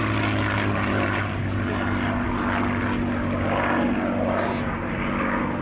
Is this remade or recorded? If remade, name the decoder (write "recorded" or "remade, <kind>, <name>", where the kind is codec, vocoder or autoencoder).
recorded